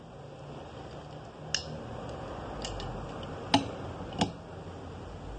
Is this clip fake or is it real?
real